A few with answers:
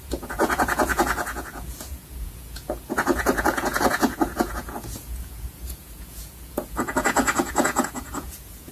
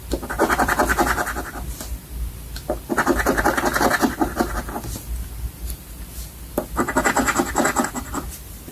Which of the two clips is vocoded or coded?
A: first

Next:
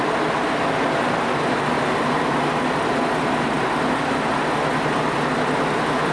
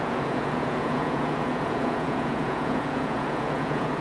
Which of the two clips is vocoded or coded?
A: second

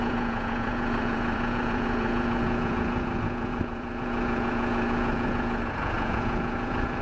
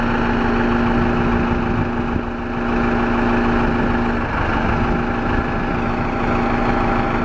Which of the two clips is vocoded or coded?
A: first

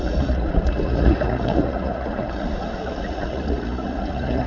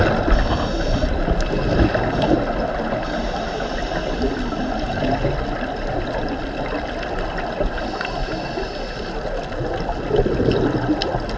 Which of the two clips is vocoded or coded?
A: first